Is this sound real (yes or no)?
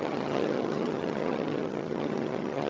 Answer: no